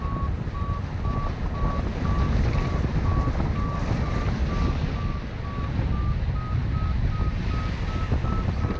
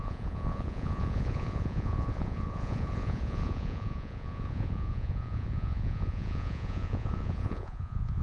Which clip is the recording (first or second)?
first